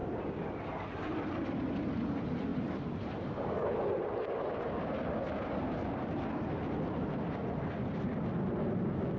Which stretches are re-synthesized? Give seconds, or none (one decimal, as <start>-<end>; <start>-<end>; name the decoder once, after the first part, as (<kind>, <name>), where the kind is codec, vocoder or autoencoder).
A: none

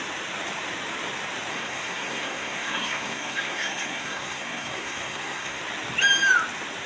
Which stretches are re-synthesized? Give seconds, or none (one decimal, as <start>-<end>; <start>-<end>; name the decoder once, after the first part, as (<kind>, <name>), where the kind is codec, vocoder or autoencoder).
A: 1.5-5.6 (codec, SNAC)

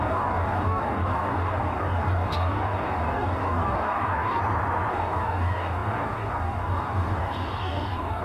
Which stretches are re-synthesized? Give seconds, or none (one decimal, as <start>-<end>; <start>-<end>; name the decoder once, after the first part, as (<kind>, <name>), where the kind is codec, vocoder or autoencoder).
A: 0.0-4.4 (codec, DAC); 4.9-8.2

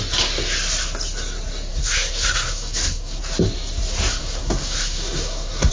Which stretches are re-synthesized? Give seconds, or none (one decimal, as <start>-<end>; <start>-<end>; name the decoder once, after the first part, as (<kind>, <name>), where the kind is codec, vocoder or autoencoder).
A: 1.7-3.2 (codec, SNAC); 4.2-5.7

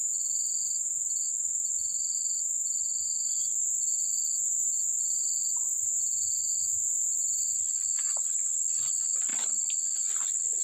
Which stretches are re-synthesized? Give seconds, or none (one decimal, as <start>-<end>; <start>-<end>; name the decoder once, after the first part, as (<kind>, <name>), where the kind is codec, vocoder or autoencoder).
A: 1.3-3.1 (vocoder, BigVGAN v2); 6.5-7.2

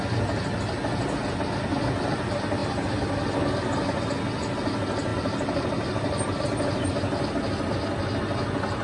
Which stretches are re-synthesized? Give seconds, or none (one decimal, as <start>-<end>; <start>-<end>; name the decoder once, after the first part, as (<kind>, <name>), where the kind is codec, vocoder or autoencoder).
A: 5.1-6.9 (vocoder, BigVGAN v2)